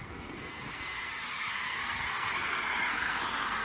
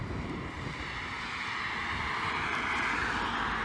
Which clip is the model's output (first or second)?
first